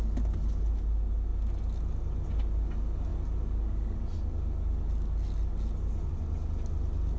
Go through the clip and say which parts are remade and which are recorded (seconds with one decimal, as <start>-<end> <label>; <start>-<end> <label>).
0.0-7.2 recorded